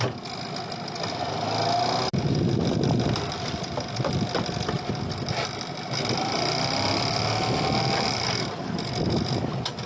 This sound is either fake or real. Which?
real